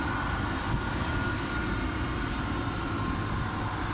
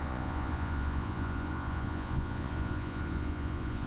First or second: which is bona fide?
first